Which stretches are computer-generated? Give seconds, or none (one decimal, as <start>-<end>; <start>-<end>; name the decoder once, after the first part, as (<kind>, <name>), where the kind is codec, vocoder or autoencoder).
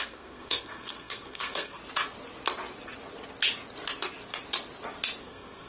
0.0-1.8 (codec, SNAC); 5.2-5.7